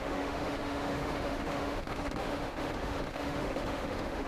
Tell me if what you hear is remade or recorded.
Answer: remade